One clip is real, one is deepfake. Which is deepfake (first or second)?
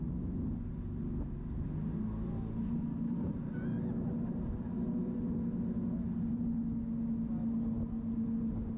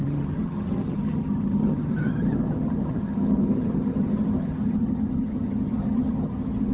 second